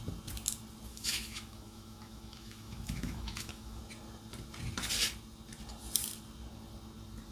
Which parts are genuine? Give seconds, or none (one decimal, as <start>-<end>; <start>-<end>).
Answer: 0.0-0.9; 3.8-7.3